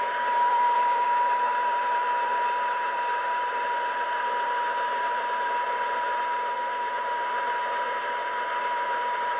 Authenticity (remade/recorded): remade